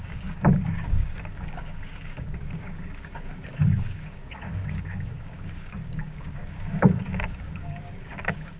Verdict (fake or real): fake